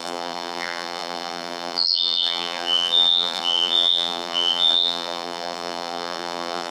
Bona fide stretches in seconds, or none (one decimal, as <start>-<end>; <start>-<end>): none